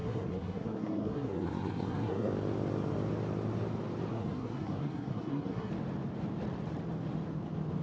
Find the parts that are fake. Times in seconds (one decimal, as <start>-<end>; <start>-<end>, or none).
0.0-2.3; 4.1-5.7